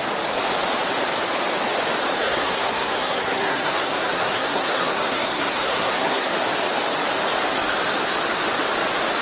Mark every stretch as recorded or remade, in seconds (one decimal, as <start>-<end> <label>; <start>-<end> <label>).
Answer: 0.0-2.2 recorded; 2.2-6.3 remade; 6.3-9.2 recorded